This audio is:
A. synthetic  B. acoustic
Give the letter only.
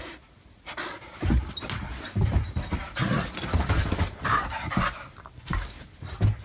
B